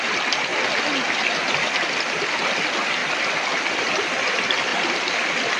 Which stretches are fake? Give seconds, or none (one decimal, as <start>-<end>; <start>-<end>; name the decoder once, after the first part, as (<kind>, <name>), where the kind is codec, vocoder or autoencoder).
none